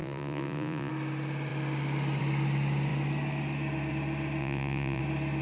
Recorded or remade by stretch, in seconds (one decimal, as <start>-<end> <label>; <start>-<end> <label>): 0.0-0.9 remade; 0.9-4.4 recorded; 4.4-5.0 remade; 5.0-5.4 recorded